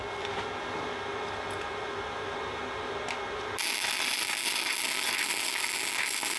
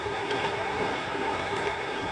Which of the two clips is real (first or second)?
first